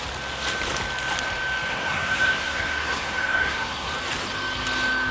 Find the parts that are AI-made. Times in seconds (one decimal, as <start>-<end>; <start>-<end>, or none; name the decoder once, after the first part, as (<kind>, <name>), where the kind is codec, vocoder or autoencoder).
1.7-3.9 (codec, SNAC)

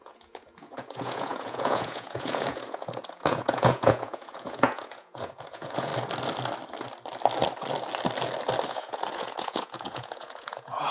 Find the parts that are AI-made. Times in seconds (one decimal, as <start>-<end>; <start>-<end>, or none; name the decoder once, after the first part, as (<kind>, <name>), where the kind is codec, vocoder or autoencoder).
0.0-5.9 (vocoder, Vocos); 8.7-10.9